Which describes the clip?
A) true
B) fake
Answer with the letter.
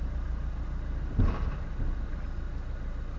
A